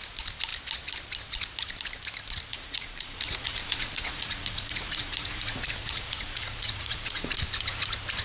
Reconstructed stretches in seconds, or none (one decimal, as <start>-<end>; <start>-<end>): 2.5-7.4